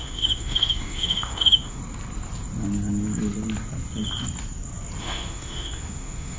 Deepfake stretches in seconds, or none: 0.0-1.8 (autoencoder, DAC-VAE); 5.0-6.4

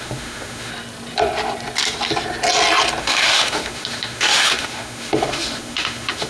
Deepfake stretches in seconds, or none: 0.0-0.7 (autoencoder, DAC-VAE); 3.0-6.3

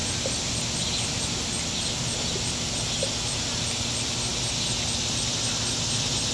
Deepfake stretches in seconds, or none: none

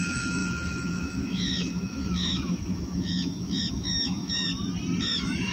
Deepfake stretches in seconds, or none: 0.0-4.5 (autoencoder, DAC-VAE); 5.0-5.5

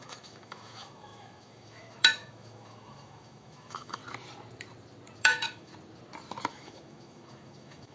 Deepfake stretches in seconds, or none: 0.0-4.0 (autoencoder, DAC-VAE); 5.2-5.7; 6.5-7.9

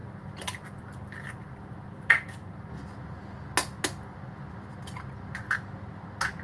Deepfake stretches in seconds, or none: none